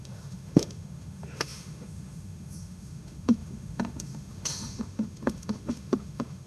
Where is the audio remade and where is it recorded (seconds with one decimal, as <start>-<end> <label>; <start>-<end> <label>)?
0.0-6.5 remade